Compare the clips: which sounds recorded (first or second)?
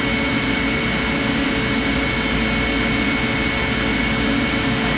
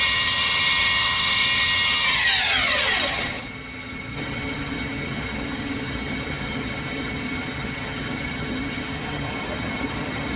first